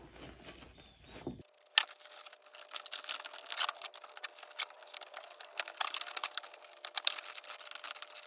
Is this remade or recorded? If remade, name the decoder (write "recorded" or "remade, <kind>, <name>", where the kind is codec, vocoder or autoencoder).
recorded